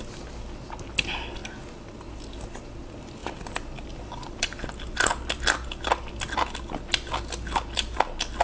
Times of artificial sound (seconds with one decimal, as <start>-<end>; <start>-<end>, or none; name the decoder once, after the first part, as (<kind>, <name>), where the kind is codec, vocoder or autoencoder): none